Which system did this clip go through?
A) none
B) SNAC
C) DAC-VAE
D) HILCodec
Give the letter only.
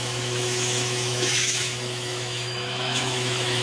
C